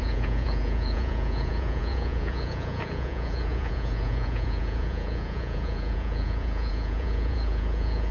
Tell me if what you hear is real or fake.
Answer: fake